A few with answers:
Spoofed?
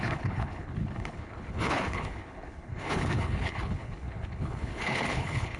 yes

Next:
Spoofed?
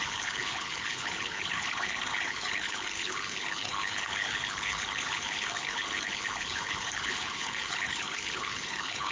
yes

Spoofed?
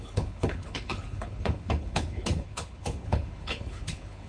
yes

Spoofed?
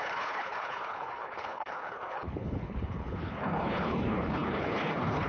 yes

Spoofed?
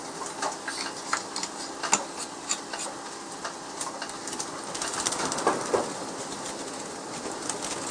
no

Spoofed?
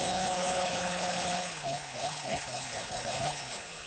yes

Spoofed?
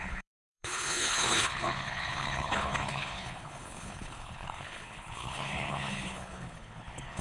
yes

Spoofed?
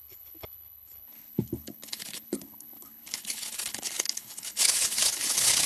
yes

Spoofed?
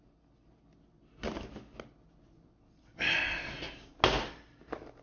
no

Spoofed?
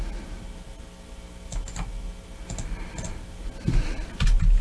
no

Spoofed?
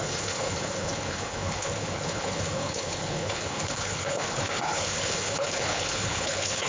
yes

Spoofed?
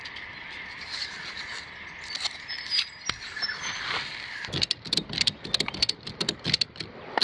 no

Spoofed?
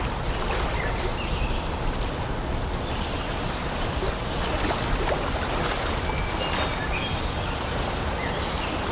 no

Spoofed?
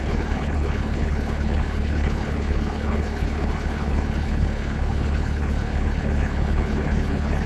yes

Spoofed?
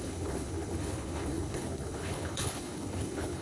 yes